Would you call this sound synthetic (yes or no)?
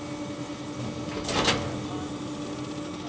no